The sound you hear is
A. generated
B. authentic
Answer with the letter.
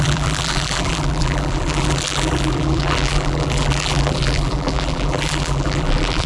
A